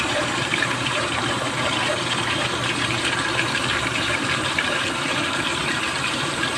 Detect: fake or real fake